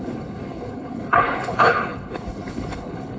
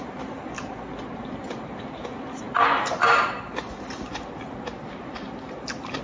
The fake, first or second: first